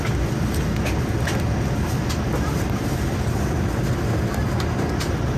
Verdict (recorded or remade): recorded